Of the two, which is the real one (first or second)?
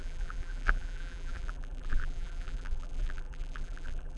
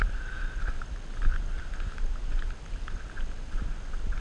second